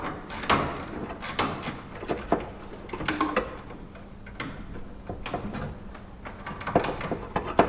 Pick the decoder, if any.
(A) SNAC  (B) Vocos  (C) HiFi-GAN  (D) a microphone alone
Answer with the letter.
D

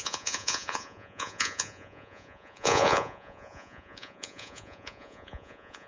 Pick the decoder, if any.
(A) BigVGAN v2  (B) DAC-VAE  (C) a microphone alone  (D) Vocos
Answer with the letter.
D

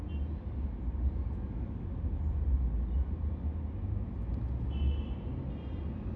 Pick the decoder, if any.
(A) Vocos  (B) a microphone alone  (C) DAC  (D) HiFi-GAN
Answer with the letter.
B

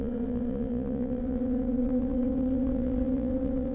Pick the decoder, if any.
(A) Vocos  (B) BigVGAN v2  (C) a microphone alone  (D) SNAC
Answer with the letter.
A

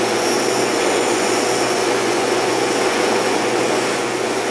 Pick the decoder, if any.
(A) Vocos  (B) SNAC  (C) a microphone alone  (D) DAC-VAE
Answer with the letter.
A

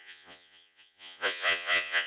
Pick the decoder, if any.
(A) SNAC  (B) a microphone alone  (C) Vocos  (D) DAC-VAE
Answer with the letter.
C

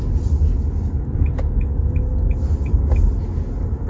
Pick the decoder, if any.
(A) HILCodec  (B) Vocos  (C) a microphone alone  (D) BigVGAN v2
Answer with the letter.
C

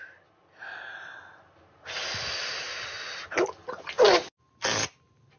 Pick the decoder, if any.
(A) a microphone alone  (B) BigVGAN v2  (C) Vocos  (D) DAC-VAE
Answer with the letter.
A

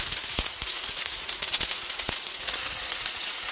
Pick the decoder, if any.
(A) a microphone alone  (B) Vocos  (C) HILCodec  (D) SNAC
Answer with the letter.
B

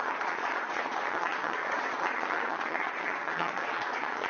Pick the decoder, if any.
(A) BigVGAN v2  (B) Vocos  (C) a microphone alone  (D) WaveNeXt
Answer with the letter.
B